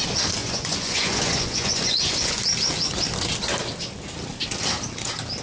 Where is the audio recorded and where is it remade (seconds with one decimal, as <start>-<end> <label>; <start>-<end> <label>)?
0.0-0.4 recorded; 0.4-2.4 remade; 2.4-5.4 recorded